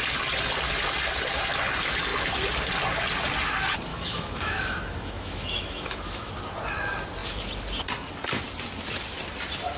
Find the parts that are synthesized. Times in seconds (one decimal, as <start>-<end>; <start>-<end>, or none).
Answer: 3.9-6.3